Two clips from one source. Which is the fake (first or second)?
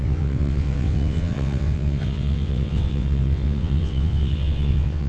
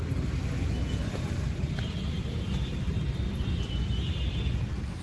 first